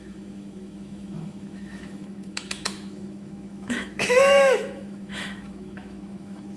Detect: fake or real fake